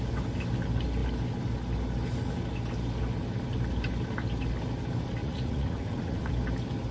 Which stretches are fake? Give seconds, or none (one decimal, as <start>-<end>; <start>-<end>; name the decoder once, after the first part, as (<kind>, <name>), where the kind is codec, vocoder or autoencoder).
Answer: 5.2-6.3 (vocoder, Vocos)